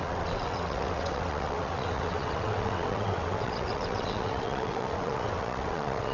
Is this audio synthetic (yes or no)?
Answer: yes